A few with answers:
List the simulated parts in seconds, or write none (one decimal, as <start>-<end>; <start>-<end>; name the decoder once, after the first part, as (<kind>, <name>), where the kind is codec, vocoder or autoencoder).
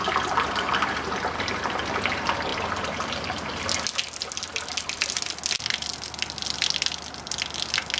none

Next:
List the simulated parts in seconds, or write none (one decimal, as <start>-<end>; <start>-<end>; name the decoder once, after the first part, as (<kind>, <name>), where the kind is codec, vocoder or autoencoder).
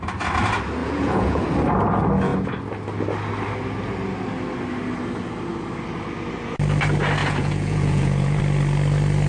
0.8-1.4 (vocoder, Vocos); 7.2-8.4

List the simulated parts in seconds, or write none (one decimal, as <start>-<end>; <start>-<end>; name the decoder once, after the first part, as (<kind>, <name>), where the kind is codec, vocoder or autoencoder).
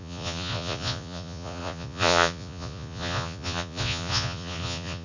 0.0-5.0 (vocoder, Vocos)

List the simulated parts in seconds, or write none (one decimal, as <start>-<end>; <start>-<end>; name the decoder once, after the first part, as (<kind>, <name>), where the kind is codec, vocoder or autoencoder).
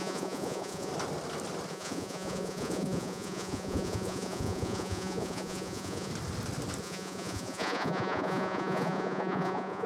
0.0-0.9 (vocoder, Vocos); 1.7-6.1; 6.8-9.9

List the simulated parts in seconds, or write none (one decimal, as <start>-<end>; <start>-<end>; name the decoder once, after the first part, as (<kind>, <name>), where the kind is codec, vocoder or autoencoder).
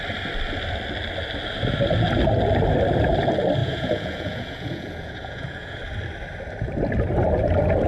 3.6-5.8 (vocoder, Vocos)